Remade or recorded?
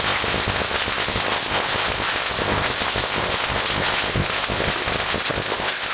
remade